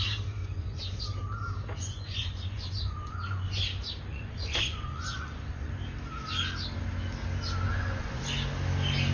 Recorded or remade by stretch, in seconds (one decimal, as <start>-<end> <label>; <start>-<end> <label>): 0.0-0.4 recorded; 0.4-1.0 remade; 1.0-1.8 recorded; 1.8-3.6 remade; 3.6-4.1 recorded; 4.1-5.7 remade; 5.7-7.7 recorded; 7.7-8.2 remade; 8.2-9.1 recorded